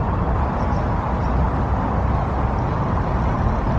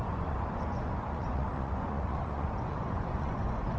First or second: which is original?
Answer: first